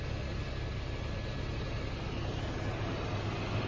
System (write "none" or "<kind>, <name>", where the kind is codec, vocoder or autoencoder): none